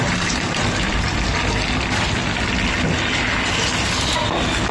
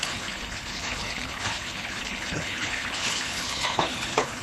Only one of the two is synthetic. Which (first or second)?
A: second